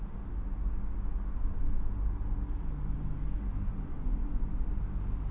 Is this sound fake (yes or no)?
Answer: no